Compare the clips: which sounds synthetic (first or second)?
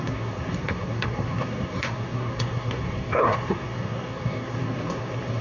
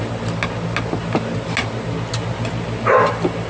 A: first